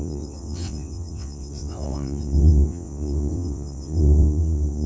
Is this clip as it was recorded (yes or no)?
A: no